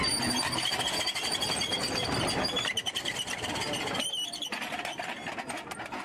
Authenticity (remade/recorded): recorded